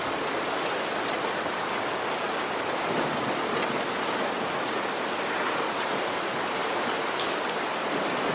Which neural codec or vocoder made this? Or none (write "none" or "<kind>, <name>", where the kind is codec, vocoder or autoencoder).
none